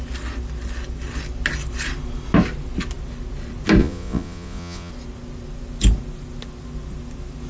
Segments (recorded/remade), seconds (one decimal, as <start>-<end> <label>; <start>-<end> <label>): 0.0-3.8 recorded; 3.8-4.9 remade; 4.9-7.5 recorded